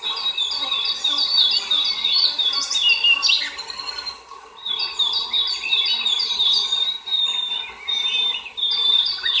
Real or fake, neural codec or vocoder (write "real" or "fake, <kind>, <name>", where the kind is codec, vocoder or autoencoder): fake, vocoder, BigVGAN v2